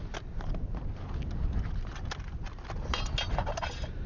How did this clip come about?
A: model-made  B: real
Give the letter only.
B